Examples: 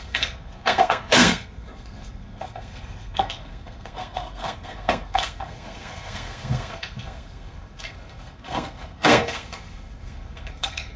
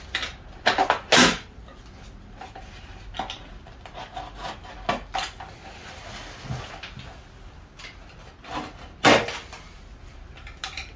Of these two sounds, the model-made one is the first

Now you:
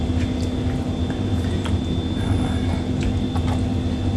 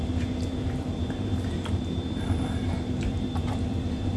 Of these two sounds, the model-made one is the second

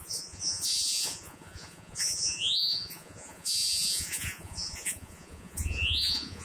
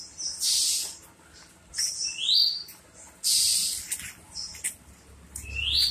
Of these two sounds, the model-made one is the first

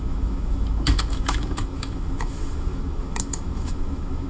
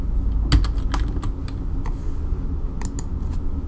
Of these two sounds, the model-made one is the first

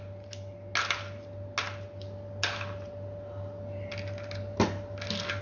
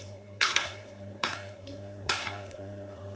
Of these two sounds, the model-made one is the second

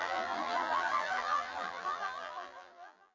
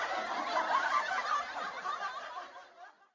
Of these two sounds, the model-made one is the first